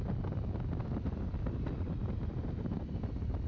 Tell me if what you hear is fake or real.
real